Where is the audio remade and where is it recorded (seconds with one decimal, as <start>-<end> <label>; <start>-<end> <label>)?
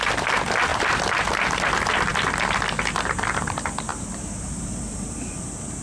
0.0-0.7 recorded; 0.7-1.4 remade; 1.4-3.9 recorded; 3.9-5.3 remade; 5.3-5.8 recorded